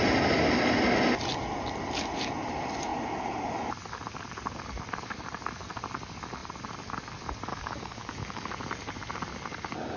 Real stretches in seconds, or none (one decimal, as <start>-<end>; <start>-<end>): 0.0-7.5; 8.5-10.0